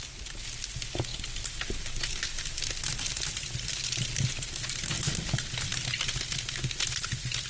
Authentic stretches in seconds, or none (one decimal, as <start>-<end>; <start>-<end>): 0.0-7.5